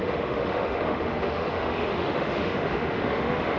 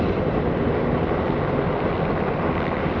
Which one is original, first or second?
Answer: second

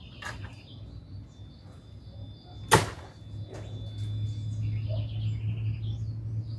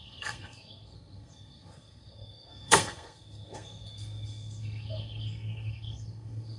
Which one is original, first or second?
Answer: first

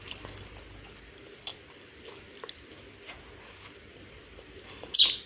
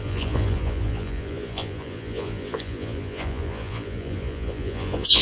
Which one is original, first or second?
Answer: first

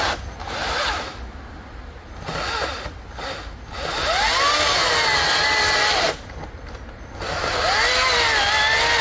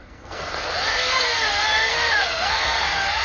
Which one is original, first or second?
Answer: first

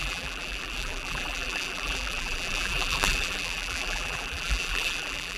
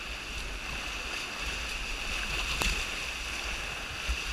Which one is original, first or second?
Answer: second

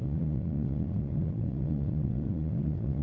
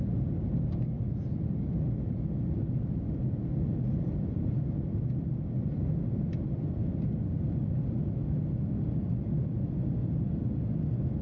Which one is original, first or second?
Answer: second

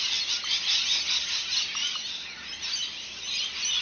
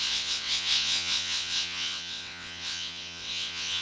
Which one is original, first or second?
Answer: first